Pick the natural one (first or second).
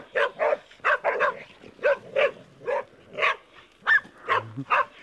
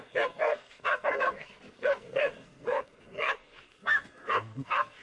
first